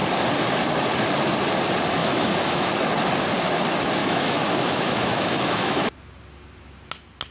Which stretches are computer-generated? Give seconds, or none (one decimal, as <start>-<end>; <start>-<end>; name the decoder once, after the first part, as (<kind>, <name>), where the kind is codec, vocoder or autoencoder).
2.0-2.7 (autoencoder, DAC-VAE); 4.0-5.9